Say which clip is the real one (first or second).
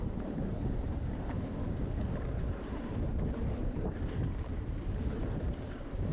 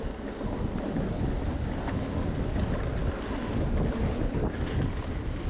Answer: second